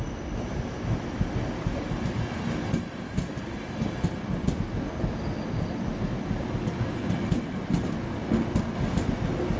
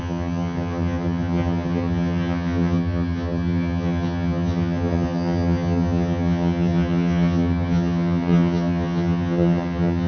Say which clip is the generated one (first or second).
second